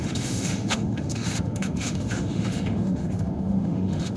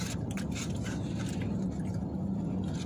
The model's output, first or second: first